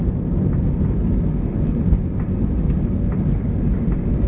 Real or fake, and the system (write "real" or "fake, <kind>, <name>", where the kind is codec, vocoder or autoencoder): real